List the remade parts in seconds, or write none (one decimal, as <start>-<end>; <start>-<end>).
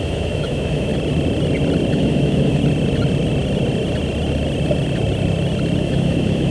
0.0-0.9; 1.9-2.6; 5.8-6.5